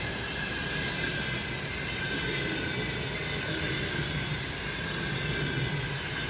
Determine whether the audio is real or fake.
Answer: real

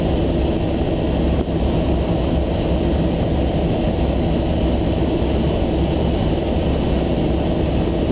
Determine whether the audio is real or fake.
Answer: real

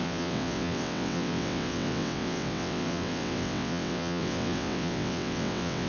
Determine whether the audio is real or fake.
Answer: fake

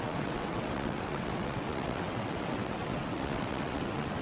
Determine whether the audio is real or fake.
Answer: fake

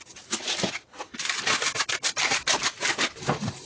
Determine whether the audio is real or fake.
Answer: real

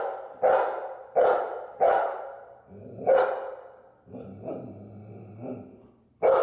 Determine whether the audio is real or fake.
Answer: real